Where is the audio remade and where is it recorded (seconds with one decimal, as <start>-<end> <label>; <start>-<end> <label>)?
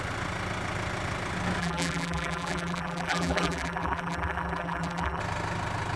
0.0-1.6 recorded; 1.6-5.2 remade; 5.2-6.0 recorded